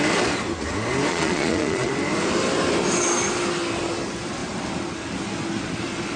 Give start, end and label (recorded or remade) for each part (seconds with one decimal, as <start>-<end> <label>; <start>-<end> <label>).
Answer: 0.0-1.1 recorded; 1.1-1.9 remade; 1.9-6.2 recorded